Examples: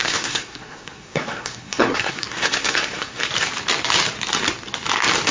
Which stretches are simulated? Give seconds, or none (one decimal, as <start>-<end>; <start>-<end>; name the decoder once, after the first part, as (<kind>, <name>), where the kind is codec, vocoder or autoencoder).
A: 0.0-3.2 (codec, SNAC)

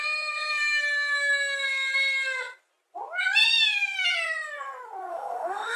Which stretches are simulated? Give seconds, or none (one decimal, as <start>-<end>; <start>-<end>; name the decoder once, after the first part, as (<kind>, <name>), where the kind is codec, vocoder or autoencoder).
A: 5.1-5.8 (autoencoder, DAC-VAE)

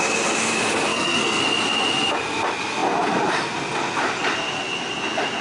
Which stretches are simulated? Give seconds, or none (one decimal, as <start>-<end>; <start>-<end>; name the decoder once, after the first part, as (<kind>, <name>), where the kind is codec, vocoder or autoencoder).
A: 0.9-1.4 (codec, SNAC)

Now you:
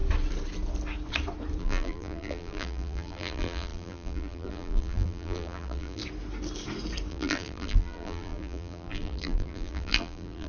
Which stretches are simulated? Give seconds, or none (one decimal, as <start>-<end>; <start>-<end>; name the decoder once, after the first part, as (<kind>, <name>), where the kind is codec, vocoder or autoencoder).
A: 1.6-6.0 (vocoder, BigVGAN v2); 7.1-10.5

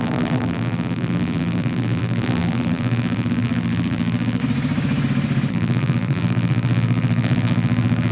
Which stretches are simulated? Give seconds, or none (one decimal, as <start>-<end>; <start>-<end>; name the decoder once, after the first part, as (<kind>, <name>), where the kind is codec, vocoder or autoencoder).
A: 0.0-4.4 (vocoder, BigVGAN v2); 5.5-8.1

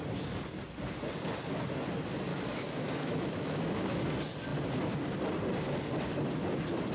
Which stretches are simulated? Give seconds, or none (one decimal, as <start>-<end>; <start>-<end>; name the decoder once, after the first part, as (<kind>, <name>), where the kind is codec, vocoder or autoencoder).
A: 2.3-4.1 (autoencoder, DAC-VAE)

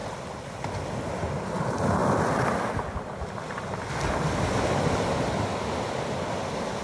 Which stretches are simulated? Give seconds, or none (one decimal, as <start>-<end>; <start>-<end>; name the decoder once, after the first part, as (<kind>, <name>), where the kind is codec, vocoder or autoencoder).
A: none

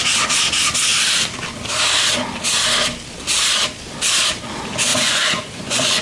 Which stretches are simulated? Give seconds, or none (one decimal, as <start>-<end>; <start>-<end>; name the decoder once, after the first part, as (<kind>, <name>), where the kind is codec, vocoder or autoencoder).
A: 4.9-6.0 (vocoder, Vocos)